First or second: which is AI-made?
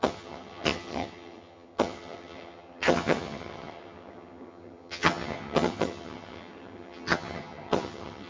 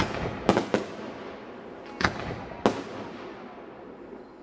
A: first